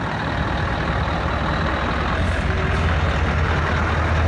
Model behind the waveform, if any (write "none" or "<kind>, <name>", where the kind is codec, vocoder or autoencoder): none